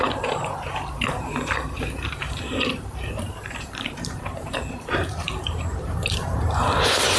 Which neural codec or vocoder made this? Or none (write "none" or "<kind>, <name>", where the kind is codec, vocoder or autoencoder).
vocoder, BigVGAN v2